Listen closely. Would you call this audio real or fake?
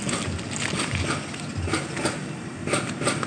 real